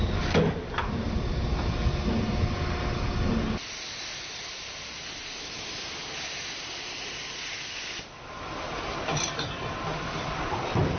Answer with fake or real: real